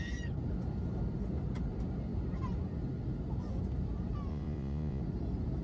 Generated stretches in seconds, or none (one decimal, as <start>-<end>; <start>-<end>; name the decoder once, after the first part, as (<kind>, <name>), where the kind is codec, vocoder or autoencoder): 4.3-5.0 (vocoder, Vocos)